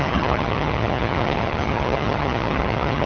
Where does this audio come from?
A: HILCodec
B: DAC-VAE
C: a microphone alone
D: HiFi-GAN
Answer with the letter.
D